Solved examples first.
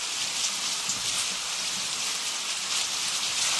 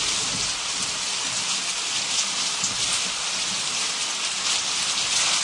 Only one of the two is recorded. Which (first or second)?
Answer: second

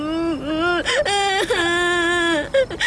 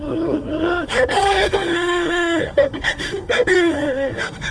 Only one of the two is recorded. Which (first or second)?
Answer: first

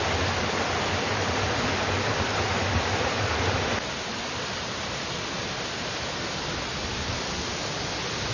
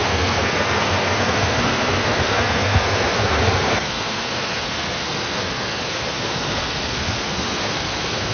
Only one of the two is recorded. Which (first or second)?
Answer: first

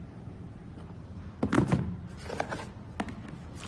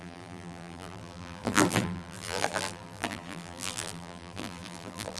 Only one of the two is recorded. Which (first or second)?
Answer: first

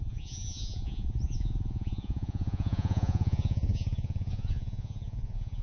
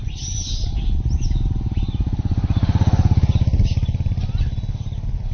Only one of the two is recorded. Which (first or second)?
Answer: second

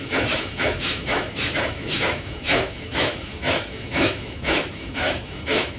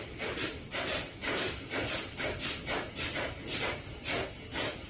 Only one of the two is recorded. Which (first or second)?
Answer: second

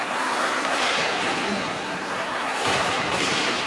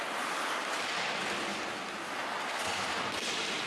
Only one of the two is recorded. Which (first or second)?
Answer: second